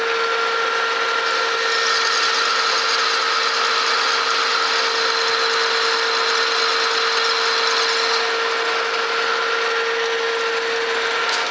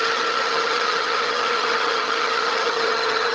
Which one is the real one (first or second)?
first